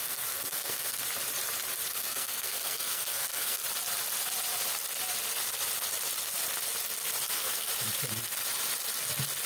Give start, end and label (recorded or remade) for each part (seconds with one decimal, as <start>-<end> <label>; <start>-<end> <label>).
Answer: 0.0-1.0 remade; 1.0-1.9 recorded; 1.9-3.6 remade; 3.6-7.3 recorded; 7.3-7.7 remade; 7.7-9.5 recorded